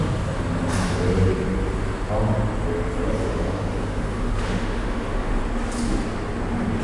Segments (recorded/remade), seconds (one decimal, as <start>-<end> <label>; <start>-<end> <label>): 0.0-3.2 recorded; 3.2-5.4 remade; 5.4-6.8 recorded